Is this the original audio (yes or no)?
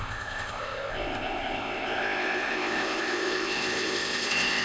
no